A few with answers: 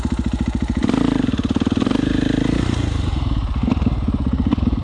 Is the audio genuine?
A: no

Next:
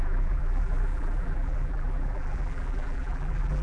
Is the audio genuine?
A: no